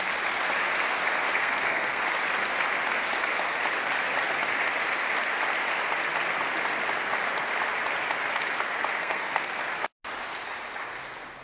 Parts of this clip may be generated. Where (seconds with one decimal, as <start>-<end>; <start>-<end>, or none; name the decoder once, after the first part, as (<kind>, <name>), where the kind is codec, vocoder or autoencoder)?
1.4-2.0 (codec, SNAC); 9.0-9.6